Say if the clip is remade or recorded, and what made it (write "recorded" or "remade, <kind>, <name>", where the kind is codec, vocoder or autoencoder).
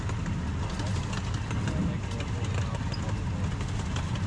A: recorded